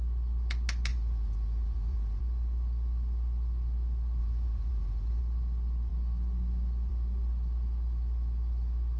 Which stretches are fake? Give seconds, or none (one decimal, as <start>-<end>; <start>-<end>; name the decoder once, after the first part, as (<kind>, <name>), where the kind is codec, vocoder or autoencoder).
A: 0.9-2.2 (vocoder, Vocos); 4.2-5.2